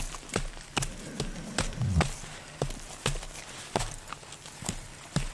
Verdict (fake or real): real